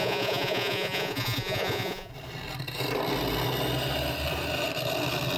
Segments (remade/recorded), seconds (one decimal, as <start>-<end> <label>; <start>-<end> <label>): 0.0-2.1 remade; 2.1-5.4 recorded